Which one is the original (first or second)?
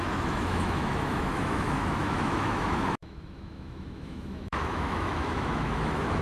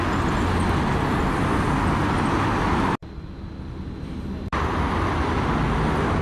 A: second